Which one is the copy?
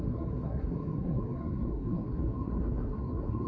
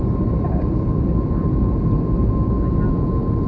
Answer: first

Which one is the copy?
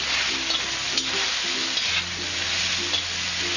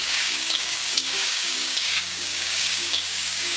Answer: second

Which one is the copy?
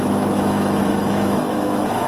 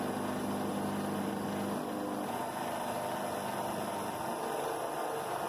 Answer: first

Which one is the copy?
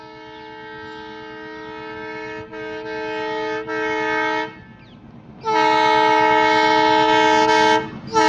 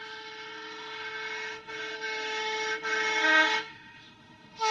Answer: second